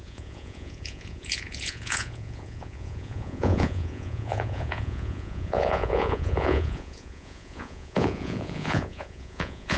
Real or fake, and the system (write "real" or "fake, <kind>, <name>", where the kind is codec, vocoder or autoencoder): fake, vocoder, Vocos